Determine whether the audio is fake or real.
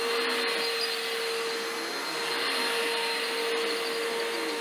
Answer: real